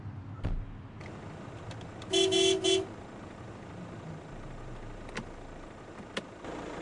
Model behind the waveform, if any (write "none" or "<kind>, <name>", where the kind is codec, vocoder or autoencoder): none